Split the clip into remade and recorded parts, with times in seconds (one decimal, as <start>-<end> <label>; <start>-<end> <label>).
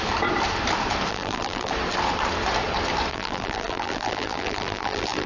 0.0-1.1 recorded; 1.1-1.7 remade; 1.7-3.1 recorded; 3.1-5.3 remade